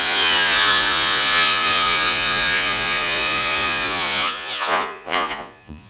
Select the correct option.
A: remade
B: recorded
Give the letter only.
A